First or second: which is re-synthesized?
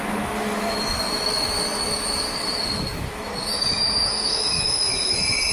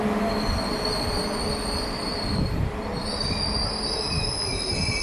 first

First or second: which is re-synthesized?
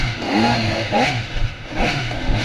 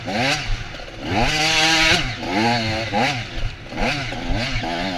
first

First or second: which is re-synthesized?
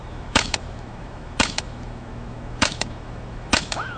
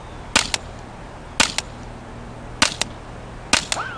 first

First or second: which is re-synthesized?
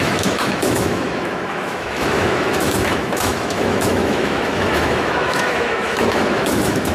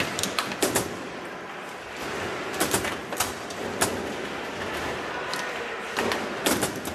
first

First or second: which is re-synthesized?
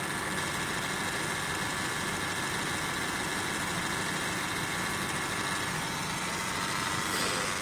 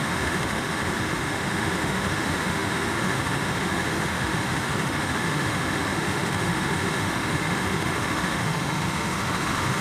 second